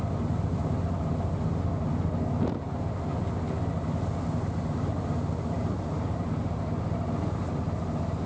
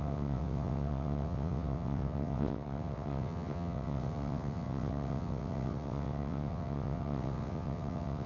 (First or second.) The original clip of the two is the first